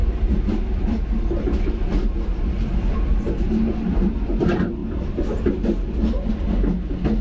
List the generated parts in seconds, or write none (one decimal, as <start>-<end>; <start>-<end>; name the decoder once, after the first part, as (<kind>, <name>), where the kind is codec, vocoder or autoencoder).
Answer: 0.0-1.4 (vocoder, BigVGAN v2)